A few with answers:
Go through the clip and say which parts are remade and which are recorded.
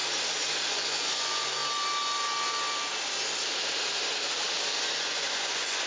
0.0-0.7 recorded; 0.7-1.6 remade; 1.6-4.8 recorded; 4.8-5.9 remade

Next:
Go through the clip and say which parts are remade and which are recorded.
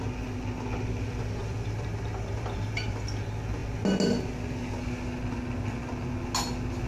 0.0-1.4 recorded; 1.4-3.1 remade; 3.1-6.9 recorded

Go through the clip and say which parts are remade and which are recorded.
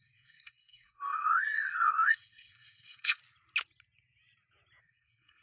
0.0-3.2 remade; 3.2-4.8 recorded; 4.8-5.4 remade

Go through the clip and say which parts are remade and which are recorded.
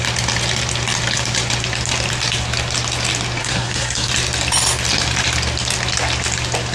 0.0-3.4 recorded; 3.4-4.1 remade; 4.1-6.7 recorded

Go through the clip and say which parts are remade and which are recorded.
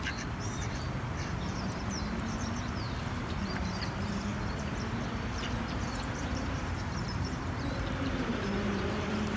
0.0-4.3 remade; 4.3-6.1 recorded; 6.1-9.4 remade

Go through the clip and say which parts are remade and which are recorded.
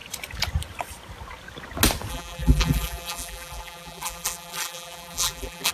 0.0-2.1 recorded; 2.1-5.7 remade